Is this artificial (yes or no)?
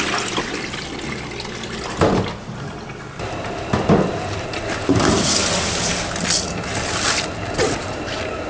yes